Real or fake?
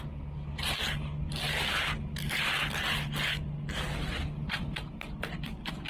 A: real